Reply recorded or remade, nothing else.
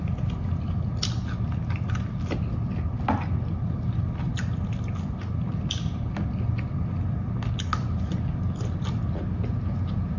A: recorded